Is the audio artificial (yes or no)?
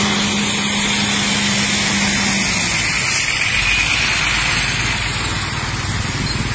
no